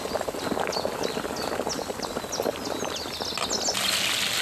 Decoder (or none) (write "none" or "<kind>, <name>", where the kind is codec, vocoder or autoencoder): none